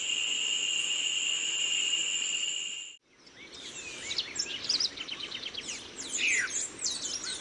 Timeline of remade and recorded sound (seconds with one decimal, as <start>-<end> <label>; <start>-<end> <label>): 0.0-7.4 recorded